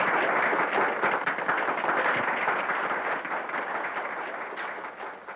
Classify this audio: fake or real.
real